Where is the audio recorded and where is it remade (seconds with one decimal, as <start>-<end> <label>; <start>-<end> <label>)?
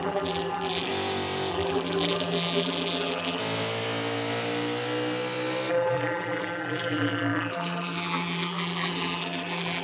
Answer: 0.0-0.9 remade; 0.9-1.5 recorded; 1.5-3.4 remade; 3.4-5.7 recorded; 5.7-9.8 remade